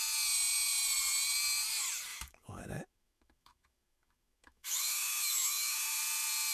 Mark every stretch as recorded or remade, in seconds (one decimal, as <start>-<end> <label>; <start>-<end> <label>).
0.0-2.1 recorded; 2.1-6.0 remade; 6.0-6.5 recorded